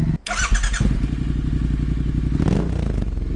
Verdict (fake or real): real